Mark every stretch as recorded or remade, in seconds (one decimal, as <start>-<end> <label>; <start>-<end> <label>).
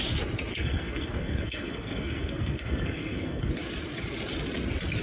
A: 0.0-0.5 recorded; 0.5-3.5 remade; 3.5-5.0 recorded